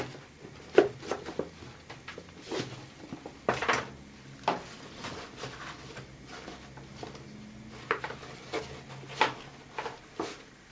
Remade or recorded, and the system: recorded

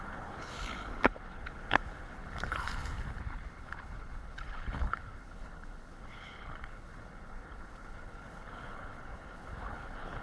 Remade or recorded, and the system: remade, codec, HILCodec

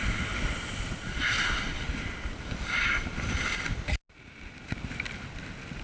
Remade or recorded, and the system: recorded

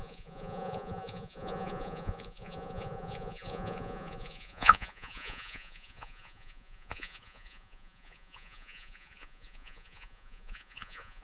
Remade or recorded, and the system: remade, vocoder, Vocos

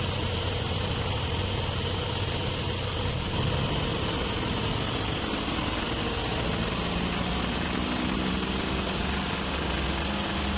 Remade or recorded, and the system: recorded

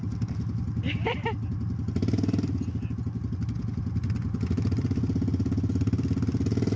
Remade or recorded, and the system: recorded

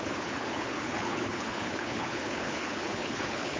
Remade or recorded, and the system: remade, codec, HILCodec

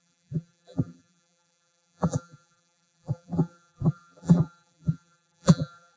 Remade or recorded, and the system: remade, vocoder, BigVGAN v2